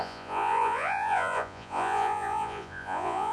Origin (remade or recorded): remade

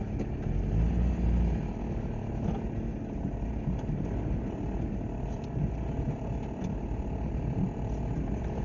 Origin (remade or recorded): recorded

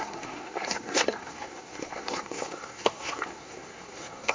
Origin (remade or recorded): remade